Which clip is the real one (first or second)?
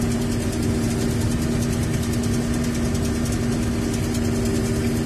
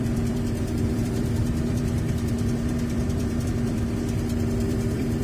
first